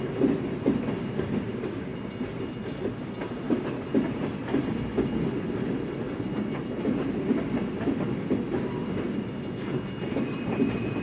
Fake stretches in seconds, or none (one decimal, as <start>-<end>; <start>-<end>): none